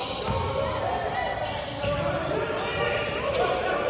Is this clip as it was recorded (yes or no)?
yes